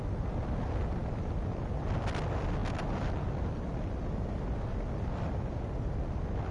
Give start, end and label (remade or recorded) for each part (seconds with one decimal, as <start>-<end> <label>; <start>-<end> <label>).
0.0-6.5 recorded